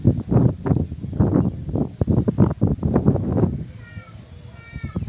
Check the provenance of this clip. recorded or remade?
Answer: recorded